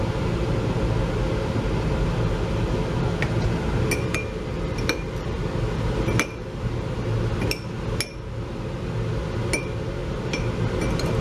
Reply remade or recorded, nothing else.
recorded